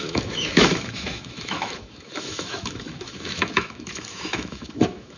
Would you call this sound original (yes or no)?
no